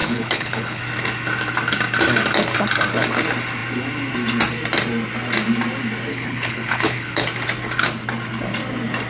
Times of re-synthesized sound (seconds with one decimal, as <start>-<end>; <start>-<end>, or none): 0.0-0.8; 6.1-7.2